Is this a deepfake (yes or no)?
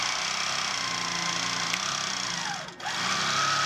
no